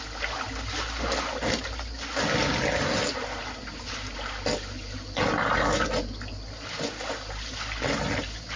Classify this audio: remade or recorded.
recorded